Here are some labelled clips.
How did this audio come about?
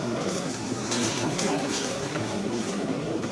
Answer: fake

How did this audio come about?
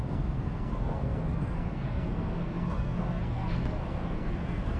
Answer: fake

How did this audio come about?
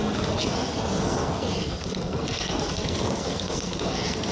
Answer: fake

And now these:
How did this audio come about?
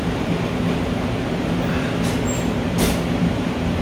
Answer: fake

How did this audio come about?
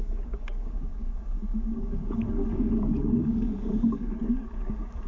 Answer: fake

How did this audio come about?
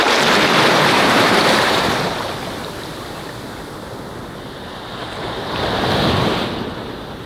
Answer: fake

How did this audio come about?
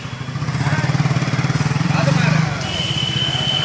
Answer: fake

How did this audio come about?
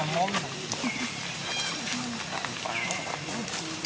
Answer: real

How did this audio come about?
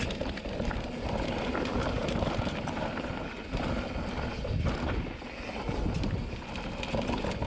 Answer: real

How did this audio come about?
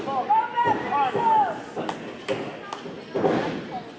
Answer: real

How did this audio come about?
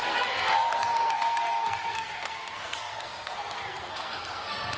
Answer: fake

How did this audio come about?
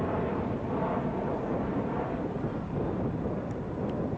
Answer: real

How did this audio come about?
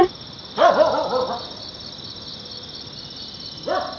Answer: real